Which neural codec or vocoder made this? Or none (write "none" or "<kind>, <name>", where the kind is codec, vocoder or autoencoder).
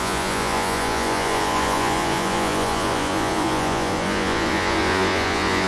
vocoder, Vocos